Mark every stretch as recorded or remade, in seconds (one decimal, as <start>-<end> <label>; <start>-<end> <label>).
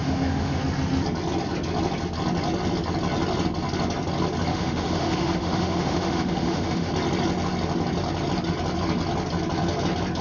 0.0-0.6 remade; 0.6-4.5 recorded; 4.5-6.9 remade; 6.9-10.2 recorded